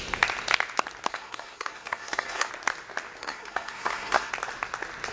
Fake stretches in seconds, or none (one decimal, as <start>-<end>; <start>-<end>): 1.1-2.5; 3.2-4.3